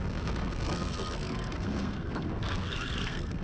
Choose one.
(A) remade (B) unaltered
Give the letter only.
A